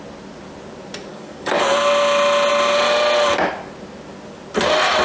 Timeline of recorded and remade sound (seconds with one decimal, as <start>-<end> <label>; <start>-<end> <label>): 0.0-1.1 recorded; 1.1-1.6 remade; 1.6-5.0 recorded